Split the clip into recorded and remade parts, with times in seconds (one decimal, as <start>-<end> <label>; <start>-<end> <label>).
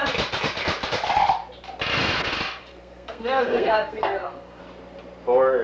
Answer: 0.0-2.6 recorded; 2.6-4.6 remade; 4.6-5.6 recorded